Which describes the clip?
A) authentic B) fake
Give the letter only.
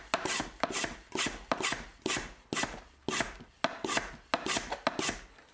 A